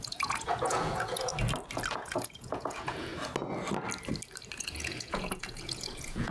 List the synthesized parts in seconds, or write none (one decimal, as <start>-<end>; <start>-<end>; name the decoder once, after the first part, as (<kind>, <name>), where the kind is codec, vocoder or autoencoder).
0.0-1.3 (vocoder, Vocos); 1.9-3.1; 4.6-6.3